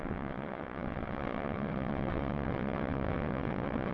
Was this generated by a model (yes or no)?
yes